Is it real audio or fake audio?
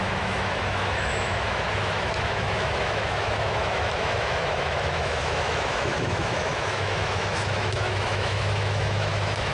fake